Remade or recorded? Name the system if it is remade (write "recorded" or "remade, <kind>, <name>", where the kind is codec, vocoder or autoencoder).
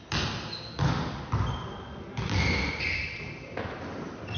recorded